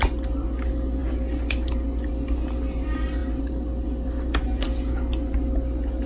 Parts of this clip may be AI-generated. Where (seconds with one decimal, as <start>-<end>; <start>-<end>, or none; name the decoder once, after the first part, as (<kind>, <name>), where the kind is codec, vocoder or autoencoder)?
none